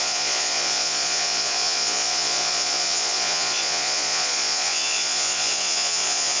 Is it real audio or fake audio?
fake